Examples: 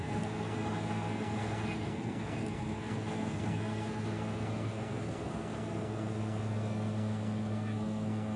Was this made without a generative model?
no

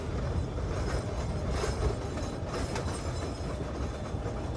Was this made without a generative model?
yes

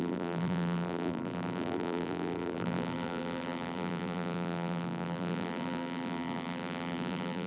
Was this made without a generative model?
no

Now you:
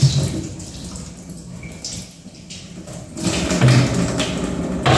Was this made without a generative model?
yes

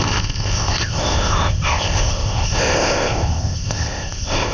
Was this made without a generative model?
no